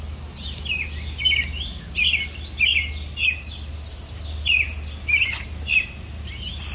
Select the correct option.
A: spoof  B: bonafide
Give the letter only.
B